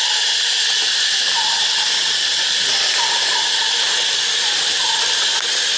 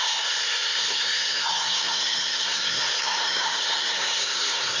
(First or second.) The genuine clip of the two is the first